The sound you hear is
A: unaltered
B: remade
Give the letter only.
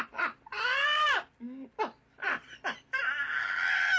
A